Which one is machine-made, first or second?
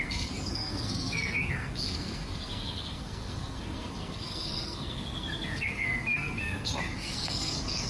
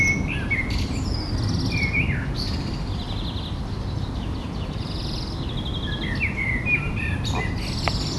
first